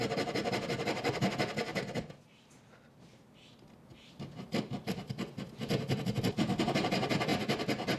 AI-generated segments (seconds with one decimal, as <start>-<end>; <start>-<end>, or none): none